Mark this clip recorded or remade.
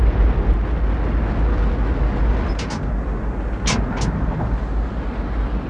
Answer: recorded